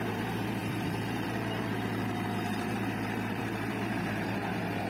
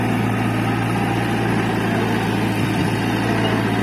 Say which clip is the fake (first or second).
first